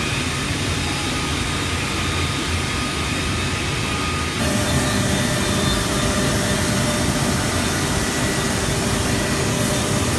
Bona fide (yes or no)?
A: yes